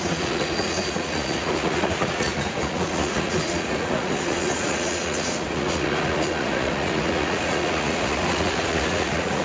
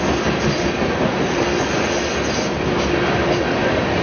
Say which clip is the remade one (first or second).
first